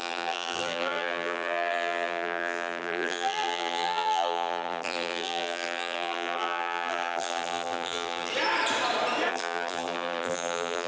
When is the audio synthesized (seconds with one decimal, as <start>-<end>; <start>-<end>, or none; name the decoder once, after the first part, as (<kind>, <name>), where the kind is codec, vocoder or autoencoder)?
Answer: 0.0-8.3 (vocoder, BigVGAN v2); 9.3-10.9